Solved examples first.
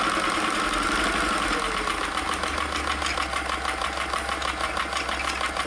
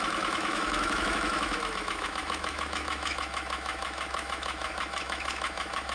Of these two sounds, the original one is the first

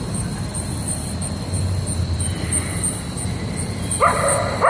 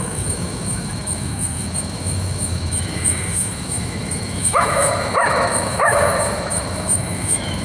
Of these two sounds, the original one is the first